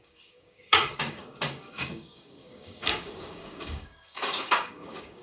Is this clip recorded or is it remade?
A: remade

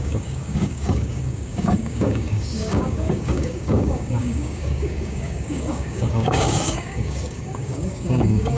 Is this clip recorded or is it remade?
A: remade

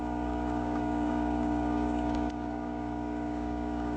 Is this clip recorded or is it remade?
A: remade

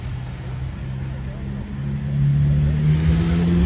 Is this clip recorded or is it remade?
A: recorded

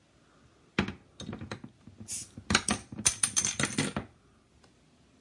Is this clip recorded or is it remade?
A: recorded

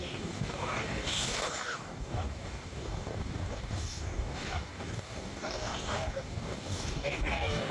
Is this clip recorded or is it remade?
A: remade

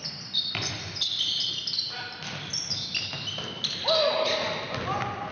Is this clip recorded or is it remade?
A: recorded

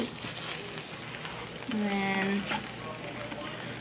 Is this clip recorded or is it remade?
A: recorded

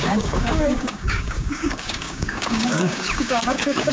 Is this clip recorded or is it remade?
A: remade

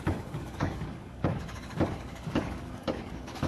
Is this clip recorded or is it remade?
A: remade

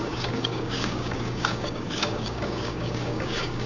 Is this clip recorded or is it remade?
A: remade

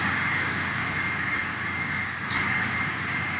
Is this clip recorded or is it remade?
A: remade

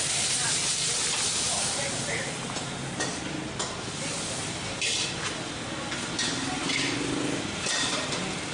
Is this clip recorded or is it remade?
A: recorded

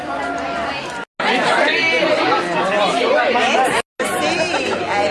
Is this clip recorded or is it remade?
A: recorded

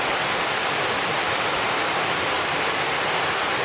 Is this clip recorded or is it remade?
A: recorded